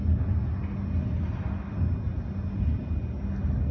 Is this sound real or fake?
real